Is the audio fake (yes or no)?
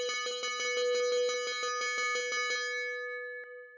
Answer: no